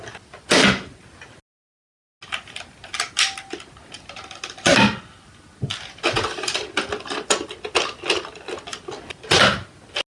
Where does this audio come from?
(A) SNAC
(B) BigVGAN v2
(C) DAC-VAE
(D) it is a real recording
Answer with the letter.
D